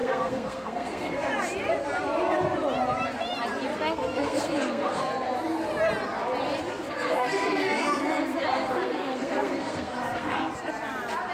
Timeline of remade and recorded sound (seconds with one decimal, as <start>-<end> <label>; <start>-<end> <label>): 0.0-1.3 remade; 1.3-3.7 recorded; 3.7-5.1 remade; 5.1-6.8 recorded; 6.8-10.5 remade; 10.5-11.3 recorded